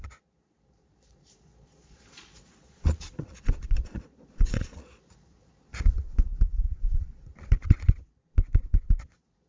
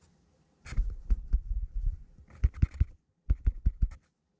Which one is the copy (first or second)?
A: first